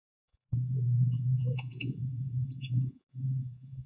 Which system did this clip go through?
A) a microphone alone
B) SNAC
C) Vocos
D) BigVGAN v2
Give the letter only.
C